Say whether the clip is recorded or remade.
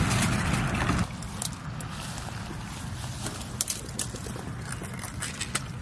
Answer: remade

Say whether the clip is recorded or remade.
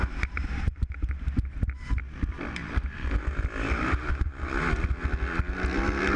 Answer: recorded